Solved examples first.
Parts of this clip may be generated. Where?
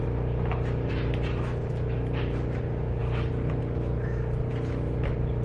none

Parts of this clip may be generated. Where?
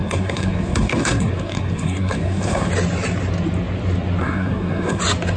0.0-2.7 (codec, SNAC); 4.2-5.0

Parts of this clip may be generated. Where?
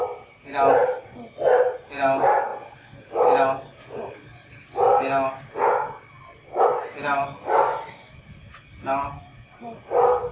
none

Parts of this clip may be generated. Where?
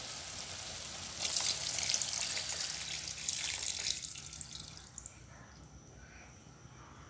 none